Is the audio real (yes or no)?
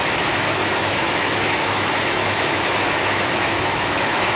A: no